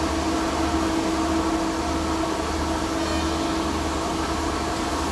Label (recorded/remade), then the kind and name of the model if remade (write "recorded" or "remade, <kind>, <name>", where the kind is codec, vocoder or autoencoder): recorded